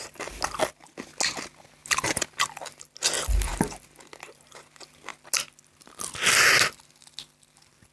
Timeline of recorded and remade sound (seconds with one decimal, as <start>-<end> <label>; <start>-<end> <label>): 0.0-7.9 recorded